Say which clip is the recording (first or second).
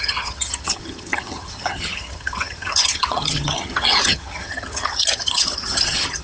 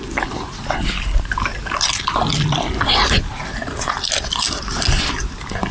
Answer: second